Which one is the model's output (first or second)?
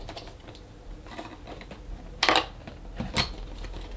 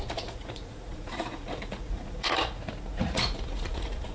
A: second